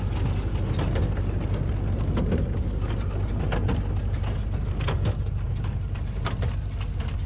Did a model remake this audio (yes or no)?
no